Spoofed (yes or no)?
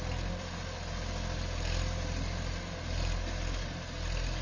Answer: no